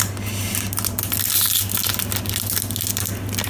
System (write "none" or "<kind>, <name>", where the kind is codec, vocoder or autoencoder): none